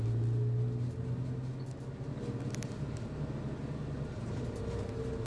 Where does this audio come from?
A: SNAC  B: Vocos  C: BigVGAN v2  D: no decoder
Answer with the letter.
D